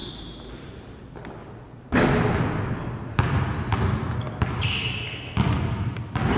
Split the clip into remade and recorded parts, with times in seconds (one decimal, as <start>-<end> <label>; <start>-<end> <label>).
0.0-1.1 remade; 1.1-6.4 recorded